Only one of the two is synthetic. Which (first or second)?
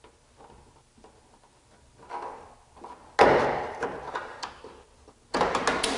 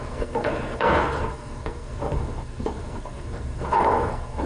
second